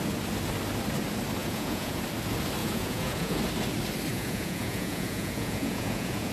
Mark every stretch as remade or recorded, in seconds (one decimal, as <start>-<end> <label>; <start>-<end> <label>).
0.0-1.4 recorded; 1.4-2.0 remade; 2.0-2.6 recorded; 2.6-3.4 remade; 3.4-4.1 recorded; 4.1-6.3 remade